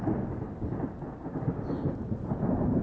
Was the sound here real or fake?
real